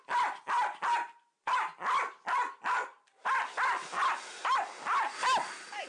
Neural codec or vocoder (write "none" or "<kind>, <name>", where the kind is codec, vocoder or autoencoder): none